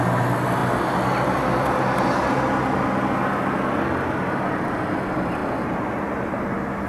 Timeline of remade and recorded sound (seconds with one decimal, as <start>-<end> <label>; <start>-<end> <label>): 0.0-6.9 recorded